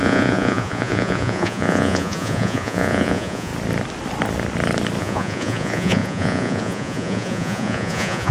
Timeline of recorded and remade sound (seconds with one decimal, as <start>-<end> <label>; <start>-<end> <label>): 0.0-3.5 remade; 3.5-5.0 recorded; 5.0-8.3 remade

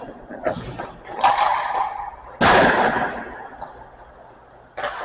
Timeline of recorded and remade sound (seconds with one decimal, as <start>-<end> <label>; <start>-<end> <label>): 0.0-5.0 recorded